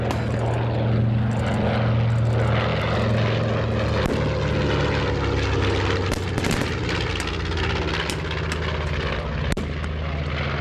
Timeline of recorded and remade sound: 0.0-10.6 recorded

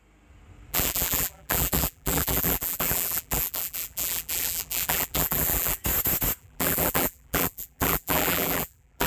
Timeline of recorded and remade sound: 0.0-0.7 recorded; 0.7-5.8 remade; 5.8-6.4 recorded; 6.4-9.1 remade

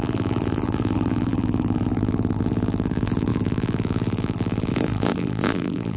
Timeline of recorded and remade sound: 0.0-6.0 remade